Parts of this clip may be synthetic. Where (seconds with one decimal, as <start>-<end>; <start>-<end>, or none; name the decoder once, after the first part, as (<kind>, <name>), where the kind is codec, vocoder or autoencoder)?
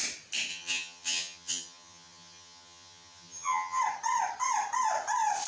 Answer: 0.5-3.8 (vocoder, HiFi-GAN)